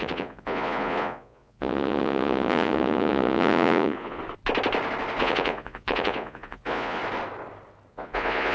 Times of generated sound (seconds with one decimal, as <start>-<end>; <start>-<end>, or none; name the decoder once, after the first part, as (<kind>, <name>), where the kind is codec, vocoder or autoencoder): 0.0-4.2 (vocoder, Vocos); 5.2-7.0; 7.9-8.5